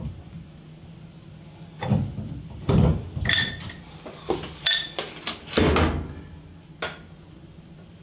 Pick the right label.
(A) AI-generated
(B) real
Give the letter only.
B